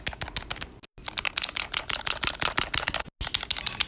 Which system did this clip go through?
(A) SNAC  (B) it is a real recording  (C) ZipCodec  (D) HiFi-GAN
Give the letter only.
B